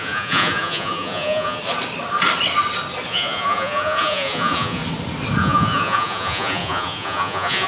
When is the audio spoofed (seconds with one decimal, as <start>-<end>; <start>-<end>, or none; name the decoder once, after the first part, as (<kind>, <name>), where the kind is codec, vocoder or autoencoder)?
0.0-1.6 (vocoder, Vocos); 3.1-4.8; 5.4-7.7